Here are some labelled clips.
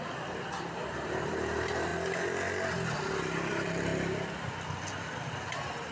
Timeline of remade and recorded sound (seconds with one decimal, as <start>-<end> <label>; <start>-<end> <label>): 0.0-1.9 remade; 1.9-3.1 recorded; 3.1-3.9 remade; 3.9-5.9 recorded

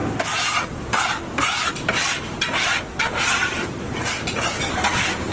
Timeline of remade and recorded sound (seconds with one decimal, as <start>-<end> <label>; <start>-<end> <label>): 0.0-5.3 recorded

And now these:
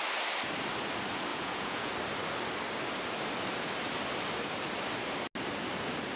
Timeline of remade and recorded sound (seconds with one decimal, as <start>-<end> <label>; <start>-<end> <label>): 0.0-1.3 recorded; 1.3-1.9 remade; 1.9-6.2 recorded

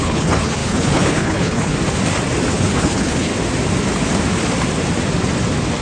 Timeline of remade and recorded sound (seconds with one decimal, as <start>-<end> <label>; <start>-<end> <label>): 0.0-1.7 remade; 1.7-2.5 recorded; 2.5-3.3 remade; 3.3-5.8 recorded

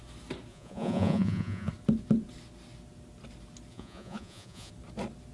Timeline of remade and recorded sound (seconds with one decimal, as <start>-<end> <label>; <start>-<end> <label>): 0.0-0.5 recorded; 0.5-1.7 remade; 1.7-3.7 recorded; 3.7-4.7 remade; 4.7-5.3 recorded

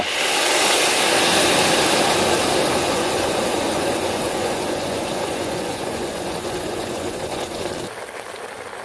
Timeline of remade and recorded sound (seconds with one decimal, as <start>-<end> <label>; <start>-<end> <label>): 0.0-2.8 recorded; 2.8-7.7 remade; 7.7-8.8 recorded

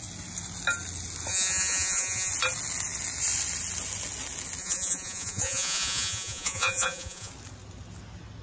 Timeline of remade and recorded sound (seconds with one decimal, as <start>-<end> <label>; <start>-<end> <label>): 0.0-1.3 recorded; 1.3-2.3 remade; 2.3-4.6 recorded; 4.6-7.3 remade; 7.3-8.4 recorded

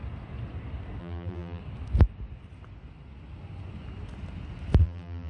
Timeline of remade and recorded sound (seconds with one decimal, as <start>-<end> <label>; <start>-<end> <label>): 0.0-1.0 recorded; 1.0-1.6 remade; 1.6-4.8 recorded; 4.8-5.3 remade